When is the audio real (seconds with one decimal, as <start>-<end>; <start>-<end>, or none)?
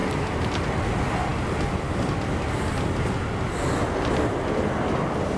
0.0-5.4